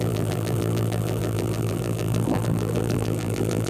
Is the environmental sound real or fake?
fake